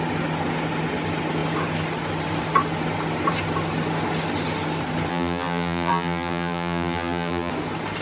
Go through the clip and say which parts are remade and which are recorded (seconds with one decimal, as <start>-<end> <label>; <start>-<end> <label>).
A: 0.0-5.1 recorded; 5.1-7.5 remade; 7.5-8.0 recorded